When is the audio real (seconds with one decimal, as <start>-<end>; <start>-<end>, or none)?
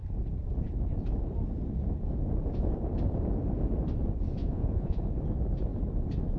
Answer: 0.0-4.4; 5.0-6.4